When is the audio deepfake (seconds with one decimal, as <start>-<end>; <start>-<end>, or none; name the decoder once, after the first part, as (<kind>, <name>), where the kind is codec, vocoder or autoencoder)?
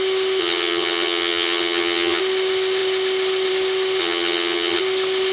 0.4-2.2 (vocoder, HiFi-GAN); 4.0-4.8